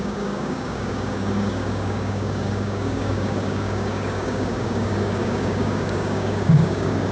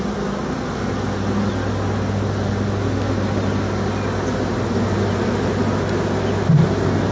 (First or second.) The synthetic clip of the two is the first